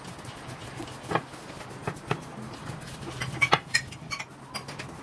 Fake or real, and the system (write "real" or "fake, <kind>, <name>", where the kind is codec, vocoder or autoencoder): real